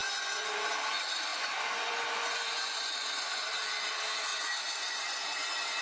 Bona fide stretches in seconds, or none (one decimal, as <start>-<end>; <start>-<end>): 0.7-1.3; 3.4-4.3